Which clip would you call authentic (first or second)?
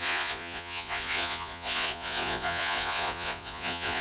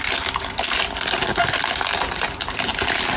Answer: second